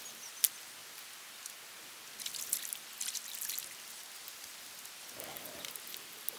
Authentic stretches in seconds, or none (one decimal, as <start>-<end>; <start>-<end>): 0.0-6.4